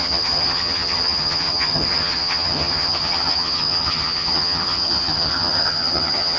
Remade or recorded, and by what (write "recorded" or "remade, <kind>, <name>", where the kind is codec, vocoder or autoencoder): remade, vocoder, HiFi-GAN